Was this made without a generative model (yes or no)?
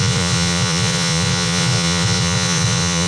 no